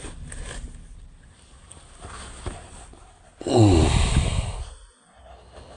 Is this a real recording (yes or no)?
yes